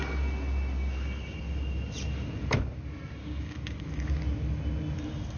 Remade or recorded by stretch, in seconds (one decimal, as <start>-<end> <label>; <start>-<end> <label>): 0.0-3.2 recorded; 3.2-4.1 remade; 4.1-5.4 recorded